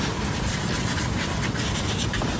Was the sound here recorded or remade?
recorded